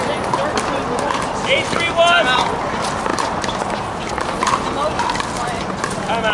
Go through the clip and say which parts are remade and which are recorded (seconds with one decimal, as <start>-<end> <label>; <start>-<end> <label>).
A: 0.0-6.3 recorded